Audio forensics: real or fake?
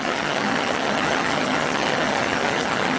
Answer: fake